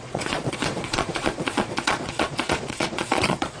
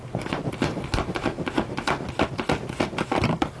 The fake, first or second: first